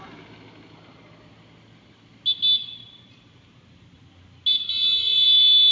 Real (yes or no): yes